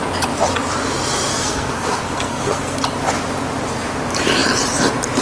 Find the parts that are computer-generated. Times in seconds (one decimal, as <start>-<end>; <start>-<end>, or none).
1.3-2.8